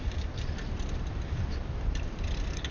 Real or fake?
real